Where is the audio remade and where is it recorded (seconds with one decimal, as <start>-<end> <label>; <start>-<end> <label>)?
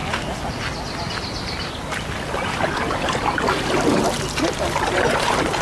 0.0-5.6 recorded